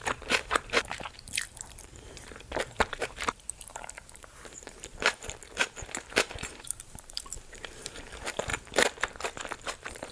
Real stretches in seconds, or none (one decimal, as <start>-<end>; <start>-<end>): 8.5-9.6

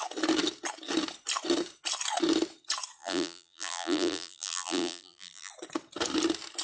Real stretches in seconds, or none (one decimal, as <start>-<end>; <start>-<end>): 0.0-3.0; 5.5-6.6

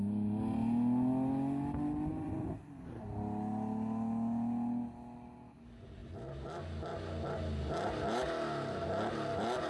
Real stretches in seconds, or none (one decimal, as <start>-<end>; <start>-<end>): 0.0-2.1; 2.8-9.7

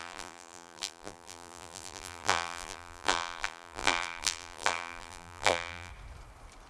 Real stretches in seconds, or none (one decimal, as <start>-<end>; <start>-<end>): 5.9-6.7

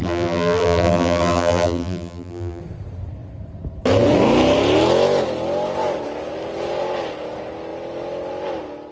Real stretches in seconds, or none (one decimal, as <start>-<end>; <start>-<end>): 2.6-8.9

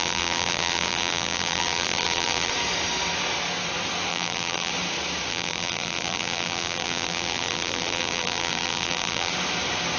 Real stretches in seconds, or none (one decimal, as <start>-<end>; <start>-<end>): 2.5-4.1; 4.7-5.3; 9.3-10.0

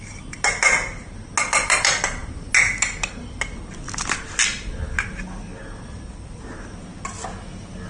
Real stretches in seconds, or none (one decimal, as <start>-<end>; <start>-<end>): 0.0-7.9

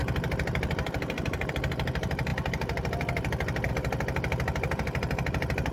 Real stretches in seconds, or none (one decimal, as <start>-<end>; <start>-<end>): 0.0-5.7